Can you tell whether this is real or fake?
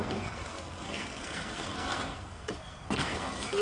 fake